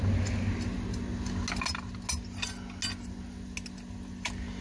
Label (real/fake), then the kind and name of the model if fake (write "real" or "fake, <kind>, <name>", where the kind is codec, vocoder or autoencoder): real